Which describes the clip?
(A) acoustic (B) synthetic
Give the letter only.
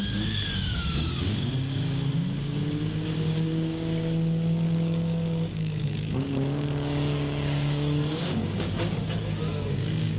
B